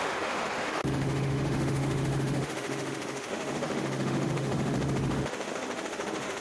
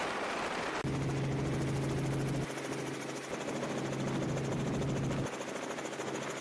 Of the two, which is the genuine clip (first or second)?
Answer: second